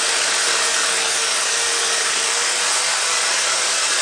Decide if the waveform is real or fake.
fake